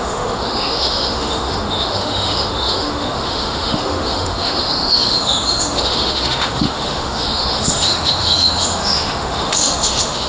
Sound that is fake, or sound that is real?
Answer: fake